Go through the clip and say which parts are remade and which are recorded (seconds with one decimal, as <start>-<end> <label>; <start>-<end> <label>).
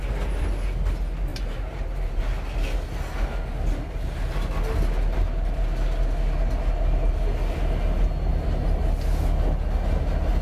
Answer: 0.0-1.3 recorded; 1.3-2.2 remade; 2.2-8.3 recorded; 8.3-8.8 remade; 8.8-10.4 recorded